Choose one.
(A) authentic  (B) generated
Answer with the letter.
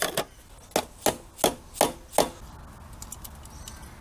A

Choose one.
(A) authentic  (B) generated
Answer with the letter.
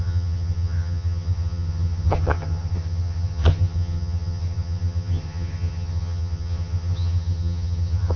B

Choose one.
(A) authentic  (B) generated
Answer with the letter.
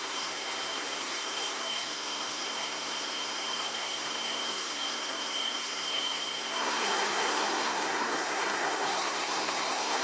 B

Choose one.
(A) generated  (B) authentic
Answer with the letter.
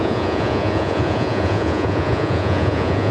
A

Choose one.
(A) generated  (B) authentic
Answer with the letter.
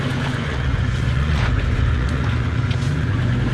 A